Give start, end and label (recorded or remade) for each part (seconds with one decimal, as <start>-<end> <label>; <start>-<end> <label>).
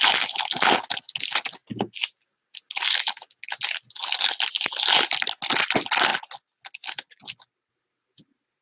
0.0-8.6 recorded